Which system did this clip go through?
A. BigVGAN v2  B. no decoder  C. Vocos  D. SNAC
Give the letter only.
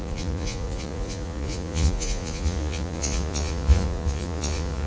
C